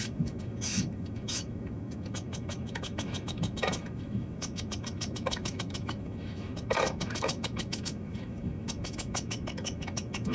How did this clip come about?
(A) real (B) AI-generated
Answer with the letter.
B